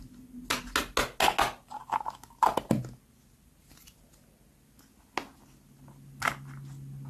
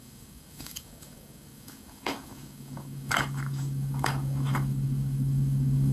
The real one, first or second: first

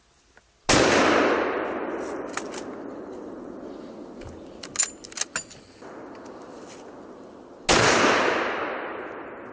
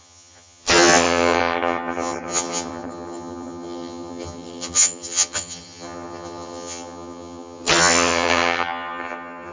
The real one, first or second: first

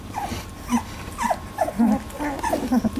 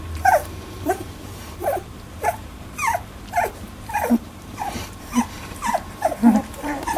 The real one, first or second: first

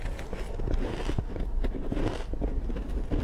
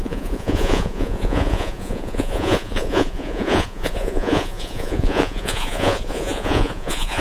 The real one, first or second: first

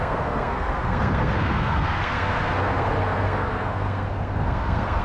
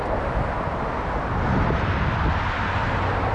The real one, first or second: second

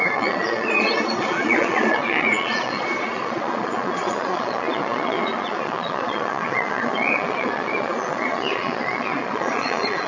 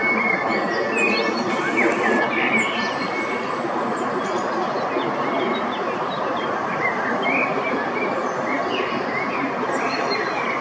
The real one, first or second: second